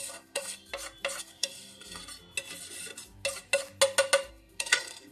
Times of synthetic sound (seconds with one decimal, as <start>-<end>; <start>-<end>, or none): 0.0-0.7; 1.2-2.0; 4.3-5.1